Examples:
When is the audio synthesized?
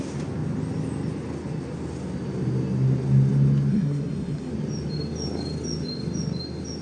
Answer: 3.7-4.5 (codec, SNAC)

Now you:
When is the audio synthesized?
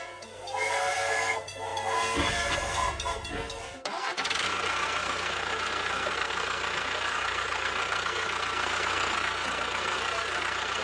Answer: 0.0-10.8 (codec, SNAC)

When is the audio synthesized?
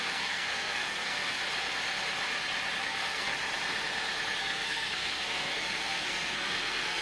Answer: 0.0-1.4 (codec, SNAC); 2.8-3.3; 4.4-7.0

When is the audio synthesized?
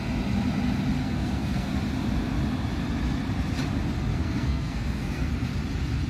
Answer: 1.0-1.7 (codec, SNAC); 4.1-5.3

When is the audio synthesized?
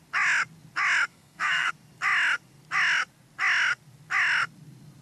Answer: 1.1-1.7 (codec, SNAC)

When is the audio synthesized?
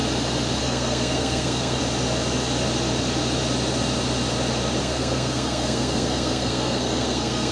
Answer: 0.6-1.8 (codec, SNAC); 4.8-7.5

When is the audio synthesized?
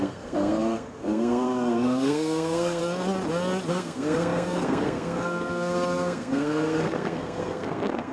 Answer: 0.0-2.8 (codec, SNAC); 3.7-8.1